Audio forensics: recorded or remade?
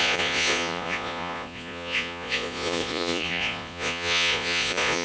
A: remade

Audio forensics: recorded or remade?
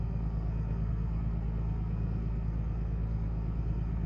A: remade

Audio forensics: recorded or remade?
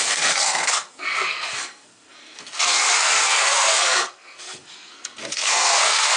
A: remade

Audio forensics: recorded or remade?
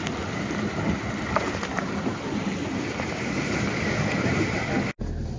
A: recorded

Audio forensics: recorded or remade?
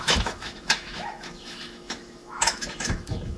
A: remade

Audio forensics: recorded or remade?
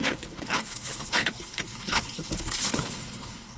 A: remade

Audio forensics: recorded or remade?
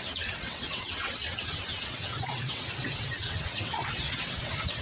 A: remade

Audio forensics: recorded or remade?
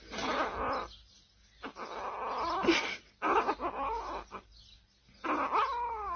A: recorded